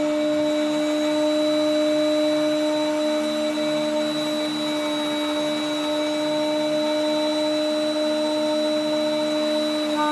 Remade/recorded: recorded